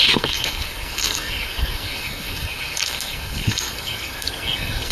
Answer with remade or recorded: remade